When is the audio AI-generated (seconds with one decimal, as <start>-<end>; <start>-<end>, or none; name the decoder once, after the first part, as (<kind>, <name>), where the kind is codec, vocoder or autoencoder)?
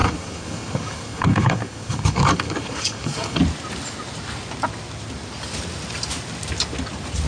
0.0-3.4 (codec, DAC)